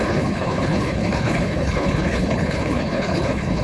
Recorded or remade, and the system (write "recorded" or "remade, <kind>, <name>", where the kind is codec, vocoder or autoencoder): remade, codec, HILCodec